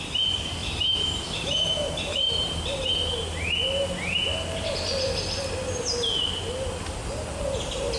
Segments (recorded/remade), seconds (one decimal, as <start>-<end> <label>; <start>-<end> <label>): 0.0-0.6 recorded; 0.6-2.9 remade; 2.9-8.0 recorded